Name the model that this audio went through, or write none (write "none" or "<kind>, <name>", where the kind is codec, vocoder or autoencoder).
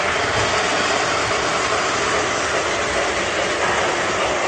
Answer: none